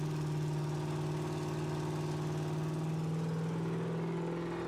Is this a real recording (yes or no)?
yes